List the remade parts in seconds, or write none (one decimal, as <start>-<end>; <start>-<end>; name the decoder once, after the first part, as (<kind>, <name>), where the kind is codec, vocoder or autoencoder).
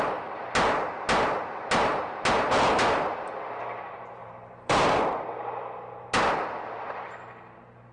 4.2-5.0 (vocoder, BigVGAN v2)